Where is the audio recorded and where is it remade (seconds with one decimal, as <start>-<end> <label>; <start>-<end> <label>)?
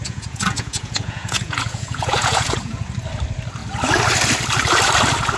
0.0-2.8 remade; 2.8-5.4 recorded